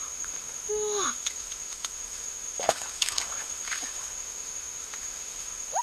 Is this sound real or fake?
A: fake